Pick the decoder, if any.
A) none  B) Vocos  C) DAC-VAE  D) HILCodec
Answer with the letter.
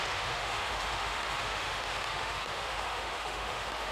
C